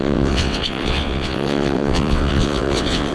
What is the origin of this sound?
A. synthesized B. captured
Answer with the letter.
A